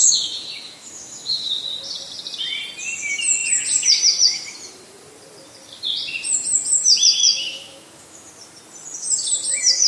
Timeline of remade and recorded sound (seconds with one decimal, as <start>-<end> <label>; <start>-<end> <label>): 0.0-1.6 remade; 1.6-7.2 recorded; 7.2-8.3 remade; 8.3-9.9 recorded